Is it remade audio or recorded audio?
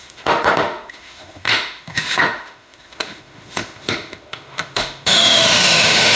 remade